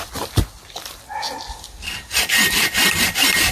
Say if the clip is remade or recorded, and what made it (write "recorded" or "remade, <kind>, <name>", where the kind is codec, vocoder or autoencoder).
remade, vocoder, BigVGAN v2